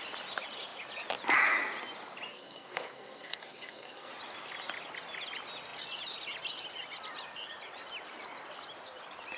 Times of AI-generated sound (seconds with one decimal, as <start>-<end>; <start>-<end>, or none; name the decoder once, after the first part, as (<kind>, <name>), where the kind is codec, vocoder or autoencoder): 2.3-4.1 (codec, SNAC)